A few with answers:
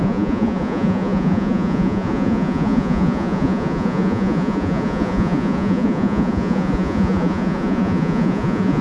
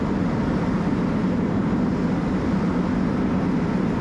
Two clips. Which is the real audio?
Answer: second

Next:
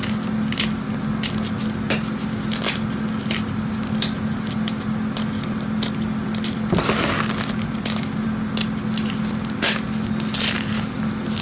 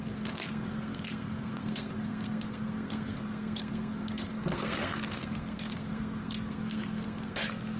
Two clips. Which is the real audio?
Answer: first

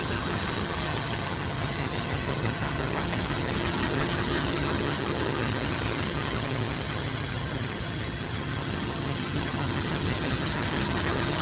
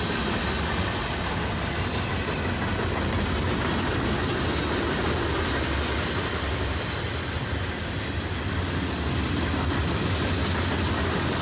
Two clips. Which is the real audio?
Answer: second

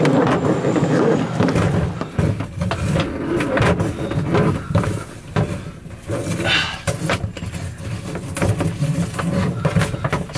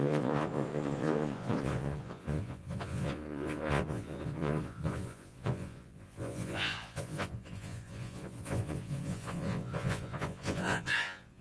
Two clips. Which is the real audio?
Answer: first